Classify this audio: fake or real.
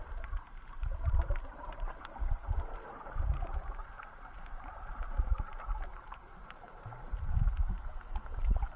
fake